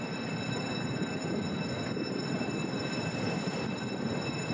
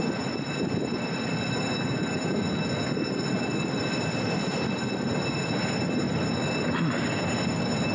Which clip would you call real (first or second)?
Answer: second